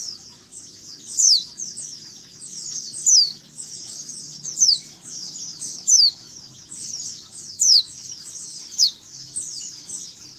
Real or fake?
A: fake